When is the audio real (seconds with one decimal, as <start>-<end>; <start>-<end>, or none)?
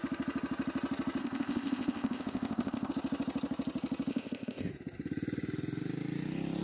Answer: 0.0-1.2; 2.9-4.1; 4.7-6.6